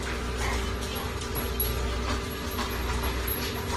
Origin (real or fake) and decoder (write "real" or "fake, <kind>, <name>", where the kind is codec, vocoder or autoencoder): real